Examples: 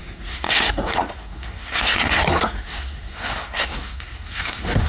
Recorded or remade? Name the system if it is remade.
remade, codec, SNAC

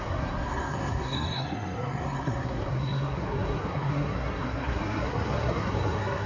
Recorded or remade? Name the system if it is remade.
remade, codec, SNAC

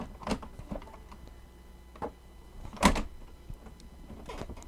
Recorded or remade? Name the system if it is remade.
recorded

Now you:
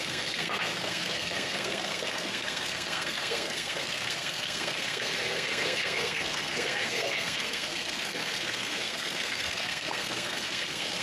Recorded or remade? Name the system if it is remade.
remade, codec, SNAC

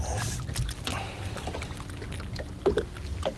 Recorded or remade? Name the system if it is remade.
recorded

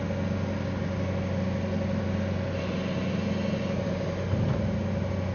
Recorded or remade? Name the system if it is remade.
recorded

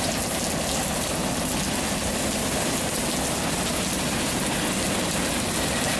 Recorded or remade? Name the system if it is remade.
recorded